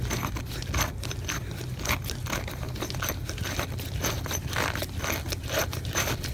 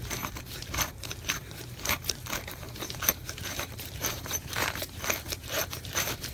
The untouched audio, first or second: first